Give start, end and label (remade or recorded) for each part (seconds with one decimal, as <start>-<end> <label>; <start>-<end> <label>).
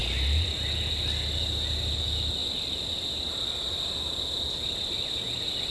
0.0-5.7 recorded